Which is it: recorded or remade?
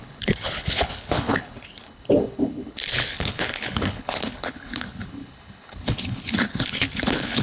remade